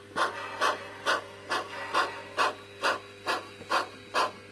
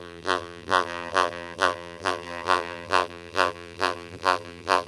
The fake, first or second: second